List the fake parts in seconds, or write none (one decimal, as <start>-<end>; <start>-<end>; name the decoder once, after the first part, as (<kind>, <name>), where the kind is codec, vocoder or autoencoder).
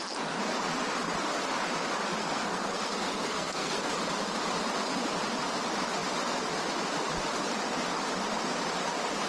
2.2-4.0 (codec, SNAC)